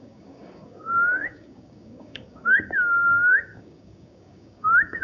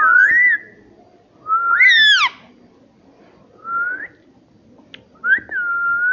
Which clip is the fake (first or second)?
first